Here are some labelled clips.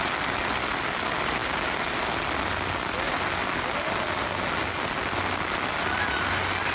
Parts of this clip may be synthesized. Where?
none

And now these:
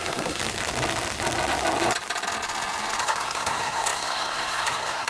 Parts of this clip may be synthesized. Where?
0.0-0.4; 3.0-5.1